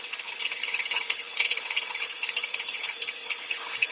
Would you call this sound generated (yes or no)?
yes